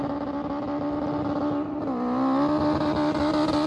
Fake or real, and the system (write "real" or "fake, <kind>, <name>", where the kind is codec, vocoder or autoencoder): real